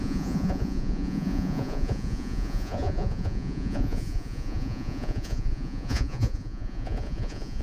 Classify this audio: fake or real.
fake